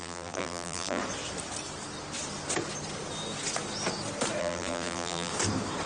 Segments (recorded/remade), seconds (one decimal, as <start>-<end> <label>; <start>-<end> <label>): 0.0-1.0 remade; 1.0-4.4 recorded; 4.4-5.3 remade; 5.3-5.9 recorded